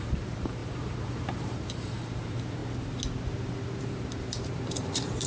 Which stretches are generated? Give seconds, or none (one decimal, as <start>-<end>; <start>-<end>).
0.0-2.6; 3.8-5.3